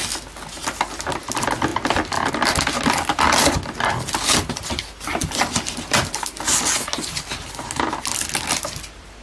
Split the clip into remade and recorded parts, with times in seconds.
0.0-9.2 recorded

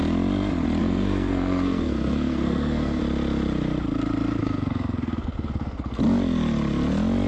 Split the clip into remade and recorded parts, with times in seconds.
0.0-0.8 recorded; 0.8-3.0 remade; 3.0-4.4 recorded; 4.4-6.0 remade; 6.0-7.3 recorded